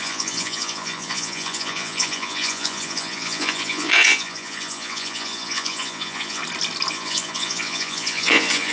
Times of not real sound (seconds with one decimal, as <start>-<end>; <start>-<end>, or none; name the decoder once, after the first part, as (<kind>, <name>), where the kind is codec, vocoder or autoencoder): 0.0-6.4 (vocoder, Vocos); 6.9-8.7